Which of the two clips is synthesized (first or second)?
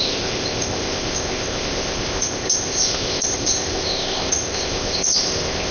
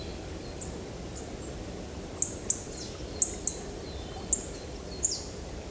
first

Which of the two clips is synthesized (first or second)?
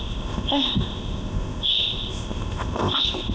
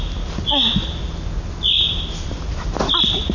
first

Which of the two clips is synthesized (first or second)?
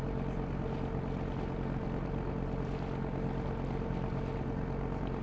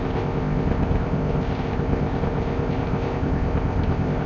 second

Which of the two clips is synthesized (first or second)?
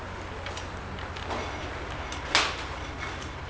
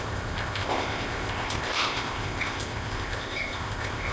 second